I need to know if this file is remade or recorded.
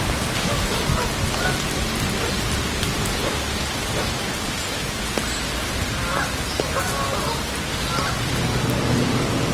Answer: recorded